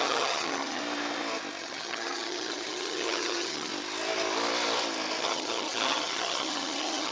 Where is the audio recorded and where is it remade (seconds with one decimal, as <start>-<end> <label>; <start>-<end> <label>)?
0.0-0.8 remade; 0.8-1.6 recorded; 1.6-3.7 remade; 3.7-5.2 recorded; 5.2-7.1 remade